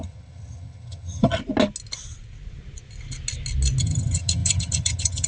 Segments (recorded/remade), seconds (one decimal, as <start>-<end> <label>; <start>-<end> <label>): 0.0-1.4 remade; 1.4-3.8 recorded; 3.8-5.3 remade